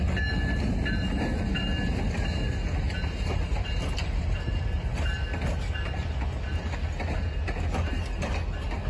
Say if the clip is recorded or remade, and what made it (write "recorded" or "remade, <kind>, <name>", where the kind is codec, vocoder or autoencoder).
recorded